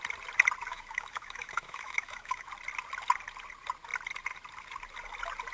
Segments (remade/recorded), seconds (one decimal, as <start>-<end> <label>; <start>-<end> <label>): 0.0-0.7 recorded; 0.7-2.5 remade; 2.5-5.5 recorded